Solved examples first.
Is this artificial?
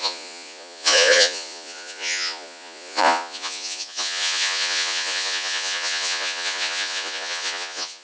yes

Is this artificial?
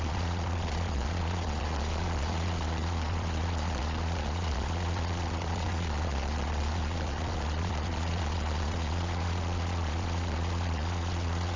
yes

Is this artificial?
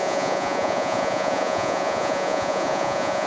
yes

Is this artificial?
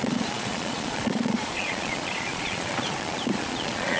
yes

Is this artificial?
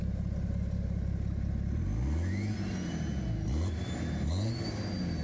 no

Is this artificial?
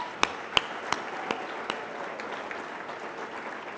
no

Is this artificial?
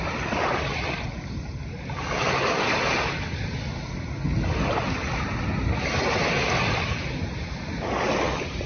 no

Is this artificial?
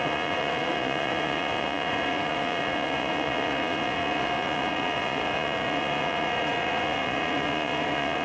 yes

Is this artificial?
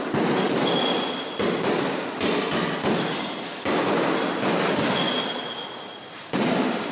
no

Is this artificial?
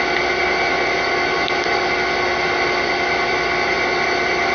no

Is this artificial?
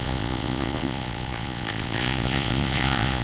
yes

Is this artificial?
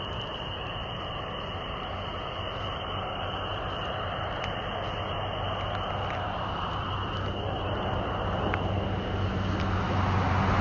no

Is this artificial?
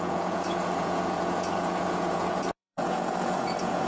yes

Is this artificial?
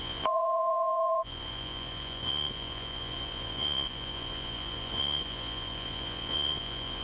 yes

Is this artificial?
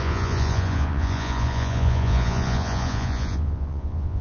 yes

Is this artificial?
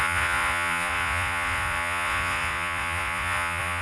yes